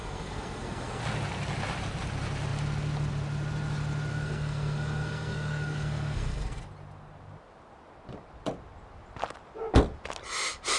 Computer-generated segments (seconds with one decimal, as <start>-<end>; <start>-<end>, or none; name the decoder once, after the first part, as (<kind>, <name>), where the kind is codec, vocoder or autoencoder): 0.0-1.0 (codec, SNAC); 4.1-6.6